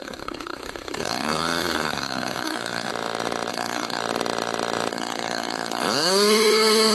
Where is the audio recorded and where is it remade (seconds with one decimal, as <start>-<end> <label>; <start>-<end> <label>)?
0.0-2.9 remade; 2.9-3.5 recorded; 3.5-4.0 remade; 4.0-4.9 recorded; 4.9-6.9 remade